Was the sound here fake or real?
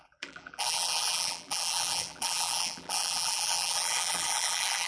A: fake